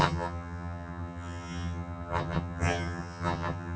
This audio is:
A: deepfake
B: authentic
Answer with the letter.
A